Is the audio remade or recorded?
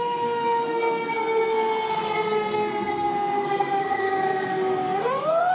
remade